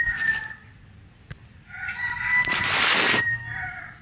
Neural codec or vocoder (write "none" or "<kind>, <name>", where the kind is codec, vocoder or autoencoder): none